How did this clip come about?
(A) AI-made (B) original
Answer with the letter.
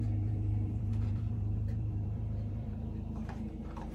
A